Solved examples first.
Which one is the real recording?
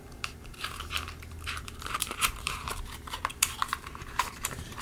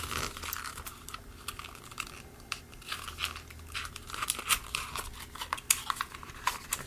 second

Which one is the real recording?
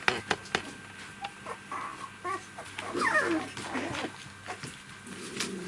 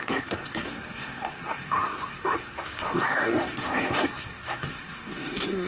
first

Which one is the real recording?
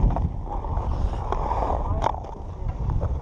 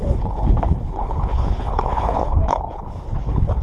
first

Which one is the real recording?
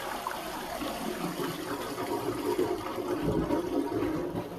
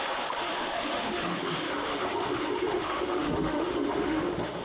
first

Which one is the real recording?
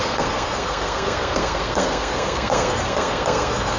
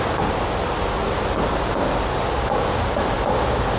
second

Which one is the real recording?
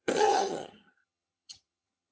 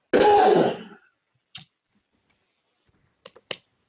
second